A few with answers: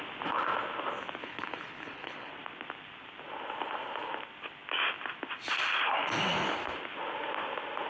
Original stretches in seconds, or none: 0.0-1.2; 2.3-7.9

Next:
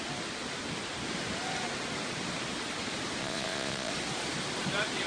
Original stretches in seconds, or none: 0.0-3.2; 3.9-5.1

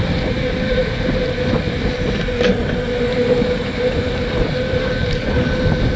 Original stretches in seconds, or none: 0.0-3.2; 4.9-6.0

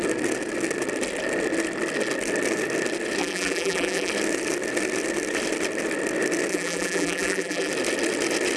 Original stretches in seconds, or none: 0.0-3.2; 4.1-6.5; 7.7-8.6